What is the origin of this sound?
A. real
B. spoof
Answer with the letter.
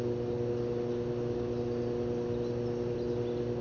A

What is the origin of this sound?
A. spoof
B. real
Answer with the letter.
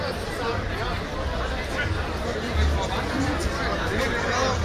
B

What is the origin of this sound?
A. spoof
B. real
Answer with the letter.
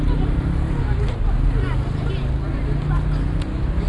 B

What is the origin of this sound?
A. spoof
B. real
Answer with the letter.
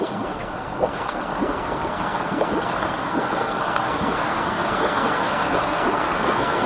A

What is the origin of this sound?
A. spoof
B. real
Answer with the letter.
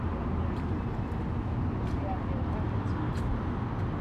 B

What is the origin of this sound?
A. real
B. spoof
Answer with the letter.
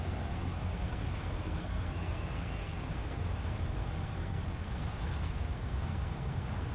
B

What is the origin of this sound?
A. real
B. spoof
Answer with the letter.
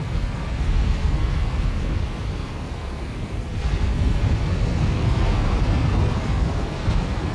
B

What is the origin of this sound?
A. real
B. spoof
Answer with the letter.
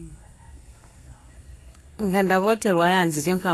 B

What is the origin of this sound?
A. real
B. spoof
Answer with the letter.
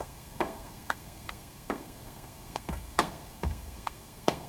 B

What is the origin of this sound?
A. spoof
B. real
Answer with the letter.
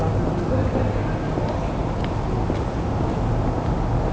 B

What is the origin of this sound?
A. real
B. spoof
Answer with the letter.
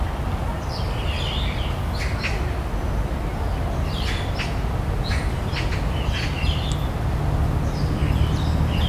A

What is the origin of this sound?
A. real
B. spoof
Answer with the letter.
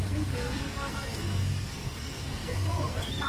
B